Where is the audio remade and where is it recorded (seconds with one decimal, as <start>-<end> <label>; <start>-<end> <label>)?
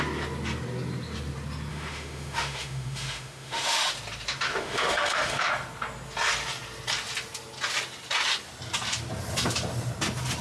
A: 0.0-1.7 recorded; 1.7-3.9 remade; 3.9-4.5 recorded; 4.5-5.5 remade; 5.5-10.4 recorded